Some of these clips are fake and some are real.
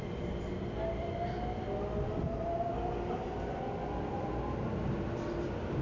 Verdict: real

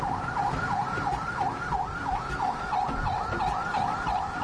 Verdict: real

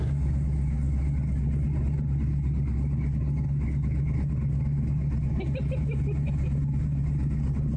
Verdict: real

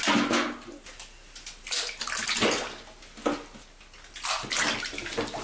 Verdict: real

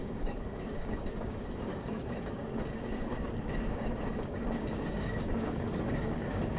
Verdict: fake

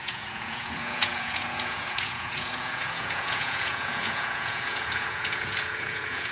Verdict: fake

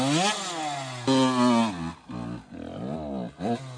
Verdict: real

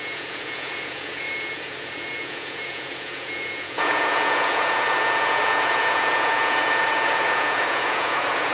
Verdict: fake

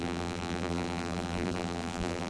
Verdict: fake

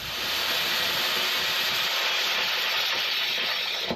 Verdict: real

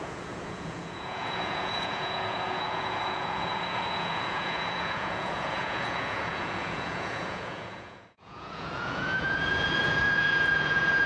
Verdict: fake